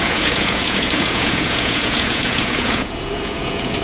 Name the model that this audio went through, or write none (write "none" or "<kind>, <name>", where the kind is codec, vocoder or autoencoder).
vocoder, Vocos